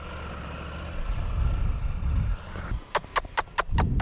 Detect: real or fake real